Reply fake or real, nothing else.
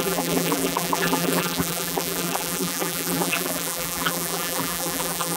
fake